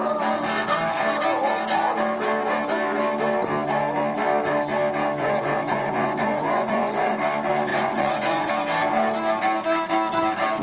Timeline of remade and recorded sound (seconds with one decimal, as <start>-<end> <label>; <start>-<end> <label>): 0.0-5.2 recorded; 5.2-7.2 remade; 7.2-7.7 recorded; 7.7-8.5 remade; 8.5-10.6 recorded